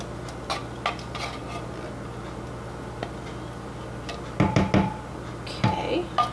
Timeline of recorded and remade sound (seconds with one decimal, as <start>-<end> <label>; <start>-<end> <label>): 0.0-6.3 recorded